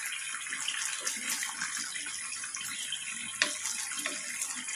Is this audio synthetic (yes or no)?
no